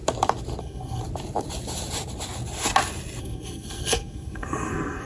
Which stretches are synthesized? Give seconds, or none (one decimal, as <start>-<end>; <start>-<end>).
0.6-1.0; 3.2-5.1